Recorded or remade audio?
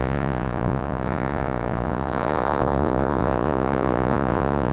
remade